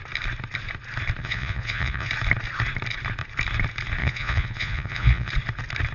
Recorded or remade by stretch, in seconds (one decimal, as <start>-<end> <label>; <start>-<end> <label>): 0.0-1.2 recorded; 1.2-2.1 remade; 2.1-4.0 recorded; 4.0-5.3 remade; 5.3-5.9 recorded